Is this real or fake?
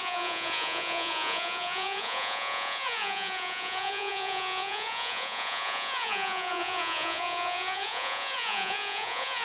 fake